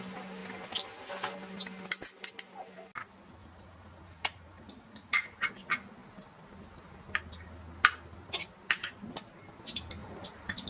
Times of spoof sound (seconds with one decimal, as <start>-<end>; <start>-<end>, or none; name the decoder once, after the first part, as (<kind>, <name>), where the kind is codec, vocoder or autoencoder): 3.4-5.5 (vocoder, Vocos); 10.0-10.7